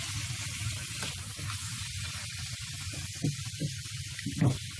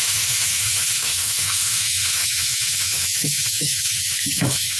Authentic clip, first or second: first